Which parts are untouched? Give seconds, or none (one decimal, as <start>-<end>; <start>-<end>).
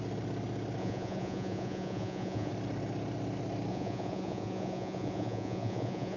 0.0-0.8; 2.5-3.7